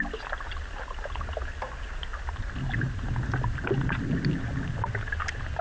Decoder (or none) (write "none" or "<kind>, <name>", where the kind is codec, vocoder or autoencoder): none